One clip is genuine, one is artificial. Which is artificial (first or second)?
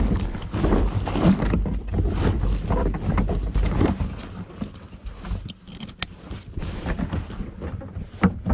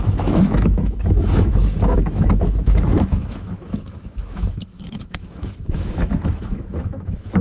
second